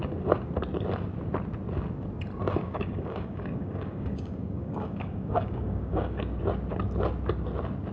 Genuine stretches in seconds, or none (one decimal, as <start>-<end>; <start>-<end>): 0.0-2.6; 6.4-7.9